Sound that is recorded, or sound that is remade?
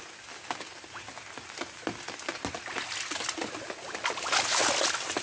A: recorded